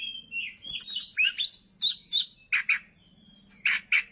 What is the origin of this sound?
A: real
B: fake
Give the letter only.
A